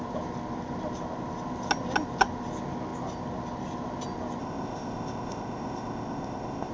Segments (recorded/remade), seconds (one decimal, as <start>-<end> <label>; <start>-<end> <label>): 0.0-4.4 recorded; 4.4-6.7 remade